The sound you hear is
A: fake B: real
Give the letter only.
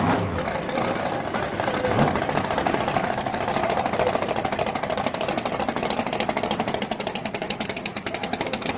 B